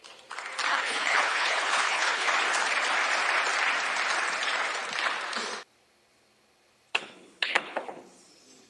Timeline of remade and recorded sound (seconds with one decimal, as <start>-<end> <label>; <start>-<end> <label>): 0.0-0.7 recorded; 0.7-2.3 remade; 2.3-6.9 recorded; 6.9-8.0 remade; 8.0-8.7 recorded

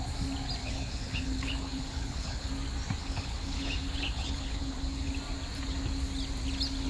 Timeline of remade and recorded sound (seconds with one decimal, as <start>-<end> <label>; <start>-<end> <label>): 0.0-0.6 recorded; 0.6-2.5 remade; 2.5-3.0 recorded; 3.0-5.1 remade; 5.1-6.9 recorded

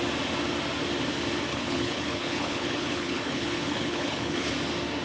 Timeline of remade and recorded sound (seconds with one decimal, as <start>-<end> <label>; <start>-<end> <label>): 0.0-1.5 recorded; 1.5-4.5 remade; 4.5-5.0 recorded

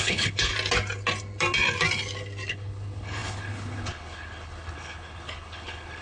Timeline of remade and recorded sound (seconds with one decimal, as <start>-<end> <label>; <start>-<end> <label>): 0.0-0.5 remade; 0.5-2.5 recorded; 2.5-6.0 remade

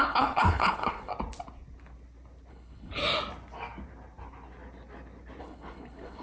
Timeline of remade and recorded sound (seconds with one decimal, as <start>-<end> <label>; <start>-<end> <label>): 0.0-1.1 remade; 1.1-2.5 recorded; 2.5-3.0 remade; 3.0-5.4 recorded; 5.4-6.2 remade

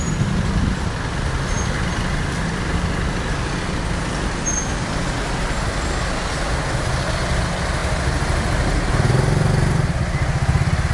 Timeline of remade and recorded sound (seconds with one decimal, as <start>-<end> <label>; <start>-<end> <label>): 0.0-10.9 recorded

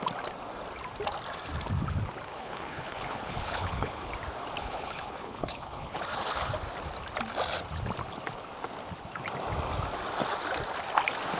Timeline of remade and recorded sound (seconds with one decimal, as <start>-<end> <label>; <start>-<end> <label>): 0.0-2.3 recorded; 2.3-4.1 remade; 4.1-4.6 recorded; 4.6-6.5 remade; 6.5-11.4 recorded